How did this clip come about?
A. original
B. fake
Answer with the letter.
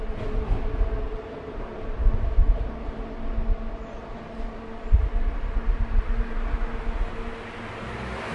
A